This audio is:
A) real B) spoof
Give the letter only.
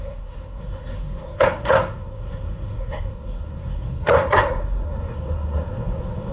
B